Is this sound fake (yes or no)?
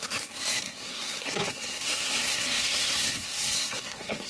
yes